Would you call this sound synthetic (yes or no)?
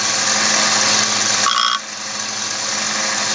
no